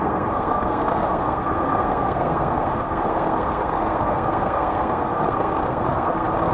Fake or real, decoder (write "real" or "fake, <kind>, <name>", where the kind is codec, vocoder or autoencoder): fake, codec, SNAC